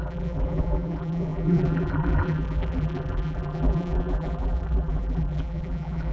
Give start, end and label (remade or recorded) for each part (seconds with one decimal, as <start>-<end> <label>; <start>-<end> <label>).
0.0-6.1 remade